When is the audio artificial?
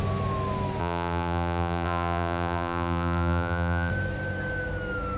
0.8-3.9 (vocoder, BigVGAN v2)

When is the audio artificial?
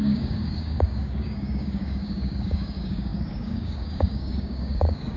0.0-5.2 (codec, DAC)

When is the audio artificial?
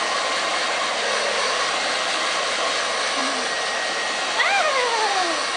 none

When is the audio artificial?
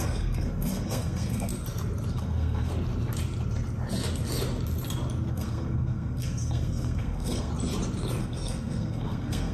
0.0-1.5 (codec, SNAC); 2.1-2.7; 5.3-7.5; 8.2-9.5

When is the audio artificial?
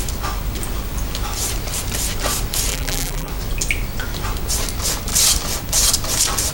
2.7-3.3 (vocoder, BigVGAN v2)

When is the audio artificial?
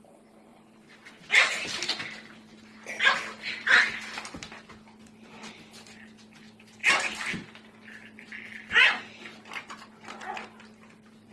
none